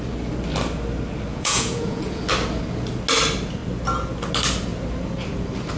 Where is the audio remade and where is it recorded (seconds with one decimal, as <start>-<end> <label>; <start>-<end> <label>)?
0.0-1.3 recorded; 1.3-2.2 remade; 2.2-5.8 recorded